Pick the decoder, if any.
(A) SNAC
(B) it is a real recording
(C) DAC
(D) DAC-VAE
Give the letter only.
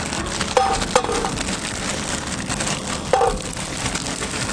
B